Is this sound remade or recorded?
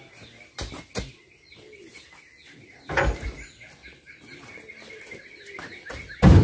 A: recorded